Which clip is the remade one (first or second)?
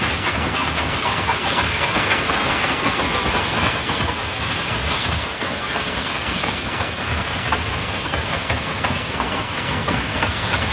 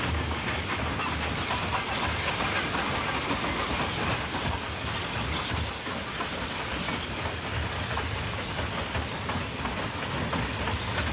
first